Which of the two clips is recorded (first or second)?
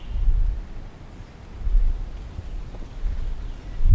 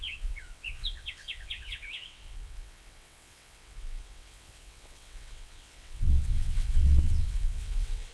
first